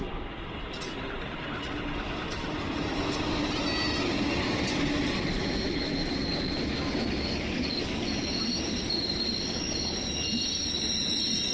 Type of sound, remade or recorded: recorded